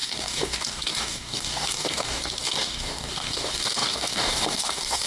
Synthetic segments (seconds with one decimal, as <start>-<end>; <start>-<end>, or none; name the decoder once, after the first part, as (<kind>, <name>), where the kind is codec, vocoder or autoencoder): 0.0-5.1 (codec, DAC)